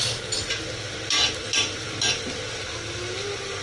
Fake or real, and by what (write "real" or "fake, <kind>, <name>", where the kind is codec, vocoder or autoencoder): real